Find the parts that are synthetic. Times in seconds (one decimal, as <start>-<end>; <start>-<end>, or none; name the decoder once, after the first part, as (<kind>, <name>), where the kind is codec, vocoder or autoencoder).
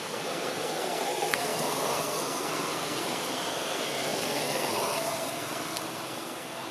0.0-6.7 (codec, SNAC)